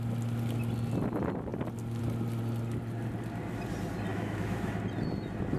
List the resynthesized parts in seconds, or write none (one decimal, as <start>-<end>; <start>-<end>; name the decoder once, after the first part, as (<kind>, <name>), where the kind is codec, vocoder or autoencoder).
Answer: 4.1-4.8 (autoencoder, DAC-VAE)